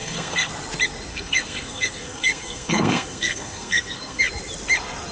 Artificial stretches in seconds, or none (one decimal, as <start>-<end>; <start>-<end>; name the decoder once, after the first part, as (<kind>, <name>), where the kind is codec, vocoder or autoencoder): 0.0-0.5 (codec, SNAC); 1.1-4.2